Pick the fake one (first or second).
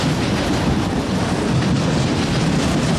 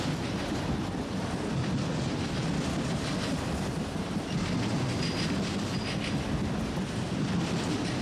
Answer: first